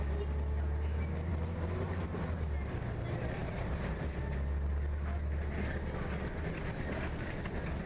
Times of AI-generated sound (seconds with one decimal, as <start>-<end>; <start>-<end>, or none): 1.3-2.2; 3.4-4.0